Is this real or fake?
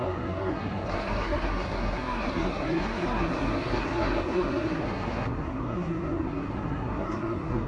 fake